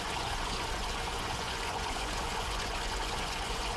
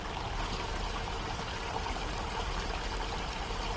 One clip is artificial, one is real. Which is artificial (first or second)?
first